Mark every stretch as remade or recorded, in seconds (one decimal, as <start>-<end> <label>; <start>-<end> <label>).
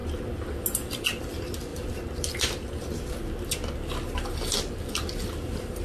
0.0-5.8 recorded